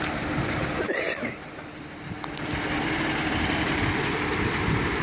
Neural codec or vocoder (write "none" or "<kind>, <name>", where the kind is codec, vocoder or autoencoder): none